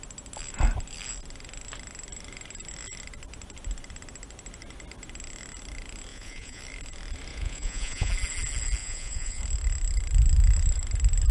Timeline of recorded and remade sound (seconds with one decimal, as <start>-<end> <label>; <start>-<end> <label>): 0.0-6.1 recorded; 6.1-6.6 remade; 6.6-7.3 recorded; 7.3-8.1 remade; 8.1-8.8 recorded; 8.8-9.4 remade; 9.4-11.3 recorded